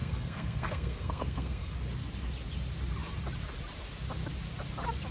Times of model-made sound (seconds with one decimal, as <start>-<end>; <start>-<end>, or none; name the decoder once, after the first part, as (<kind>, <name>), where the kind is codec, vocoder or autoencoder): 0.0-1.7 (codec, SNAC)